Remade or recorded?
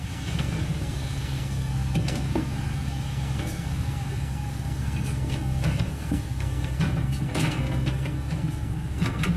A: remade